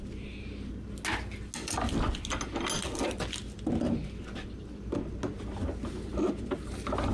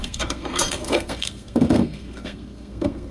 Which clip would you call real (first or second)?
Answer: first